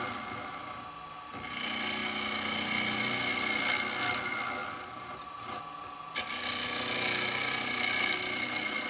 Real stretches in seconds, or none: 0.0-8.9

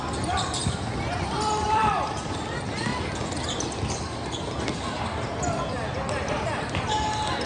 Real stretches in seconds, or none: 0.6-1.2; 2.9-7.5

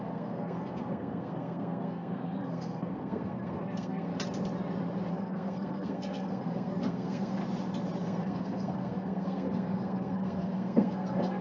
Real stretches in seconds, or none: 4.1-5.1; 7.4-8.0